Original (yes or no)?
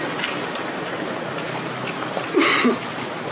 yes